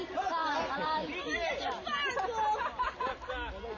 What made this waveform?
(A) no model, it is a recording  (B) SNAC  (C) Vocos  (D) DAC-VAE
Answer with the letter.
A